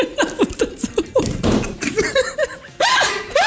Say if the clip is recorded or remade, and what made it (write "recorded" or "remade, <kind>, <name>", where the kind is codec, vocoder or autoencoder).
remade, vocoder, BigVGAN v2